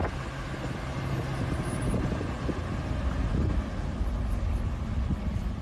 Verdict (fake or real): real